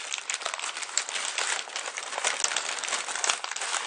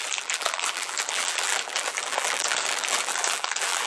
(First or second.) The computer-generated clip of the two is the second